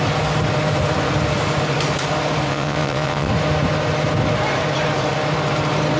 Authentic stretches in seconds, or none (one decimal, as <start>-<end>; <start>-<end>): 0.0-2.5; 3.3-6.0